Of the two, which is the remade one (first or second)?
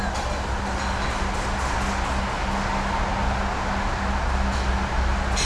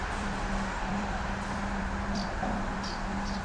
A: second